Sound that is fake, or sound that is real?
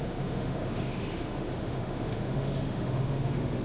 fake